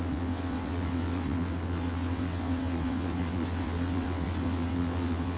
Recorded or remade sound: remade